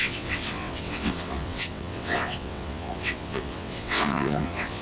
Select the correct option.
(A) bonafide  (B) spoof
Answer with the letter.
B